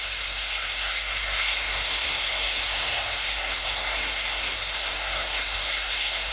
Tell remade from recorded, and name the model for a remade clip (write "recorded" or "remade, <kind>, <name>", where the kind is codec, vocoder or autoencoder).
remade, codec, SNAC